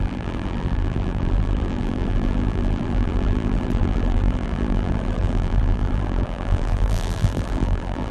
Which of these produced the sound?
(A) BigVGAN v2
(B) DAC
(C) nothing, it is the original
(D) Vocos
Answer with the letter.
A